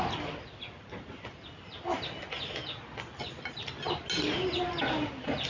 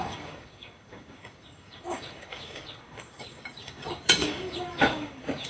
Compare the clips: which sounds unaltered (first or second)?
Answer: first